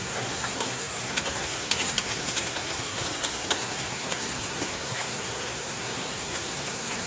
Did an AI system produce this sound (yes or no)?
yes